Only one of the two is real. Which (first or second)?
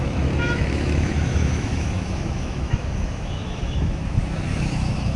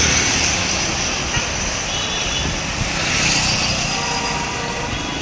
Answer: second